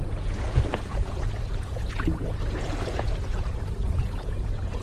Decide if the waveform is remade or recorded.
remade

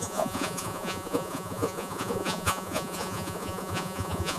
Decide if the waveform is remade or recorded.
remade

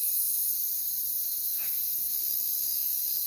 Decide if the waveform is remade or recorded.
remade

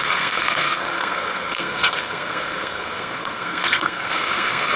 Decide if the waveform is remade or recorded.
remade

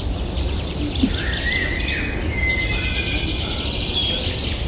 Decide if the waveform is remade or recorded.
recorded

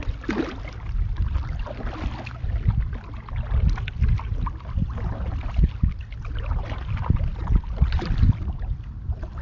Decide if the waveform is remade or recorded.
recorded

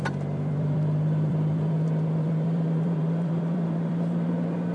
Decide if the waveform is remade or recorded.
remade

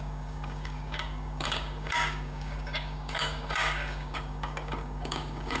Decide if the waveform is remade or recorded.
remade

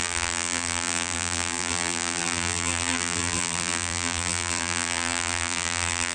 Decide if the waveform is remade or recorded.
remade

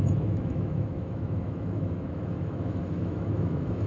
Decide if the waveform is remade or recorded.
remade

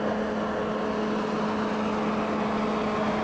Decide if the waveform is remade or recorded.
recorded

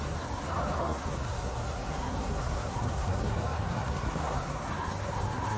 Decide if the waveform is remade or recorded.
remade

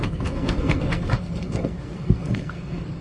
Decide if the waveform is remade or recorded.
remade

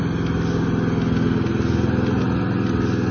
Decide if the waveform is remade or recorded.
recorded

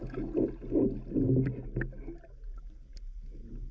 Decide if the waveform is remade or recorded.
recorded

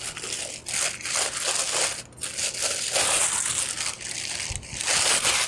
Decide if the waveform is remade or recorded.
recorded